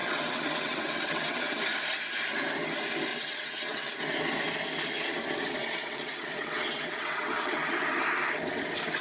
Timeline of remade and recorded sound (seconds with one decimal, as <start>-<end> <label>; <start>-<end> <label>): 0.0-1.4 remade; 1.4-3.1 recorded; 3.1-3.9 remade; 3.9-5.6 recorded; 5.6-7.7 remade; 7.7-9.0 recorded